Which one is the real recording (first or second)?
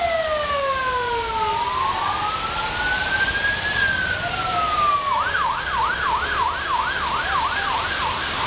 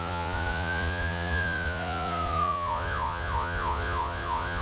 first